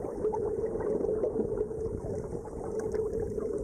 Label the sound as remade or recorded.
recorded